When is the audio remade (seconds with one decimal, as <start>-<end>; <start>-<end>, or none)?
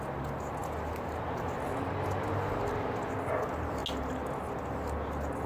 none